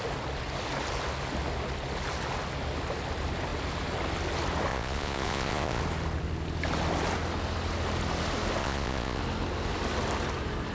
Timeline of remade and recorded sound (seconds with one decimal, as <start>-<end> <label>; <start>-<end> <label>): 0.0-4.7 recorded; 4.7-5.8 remade; 5.8-8.6 recorded; 8.6-9.2 remade; 9.2-10.7 recorded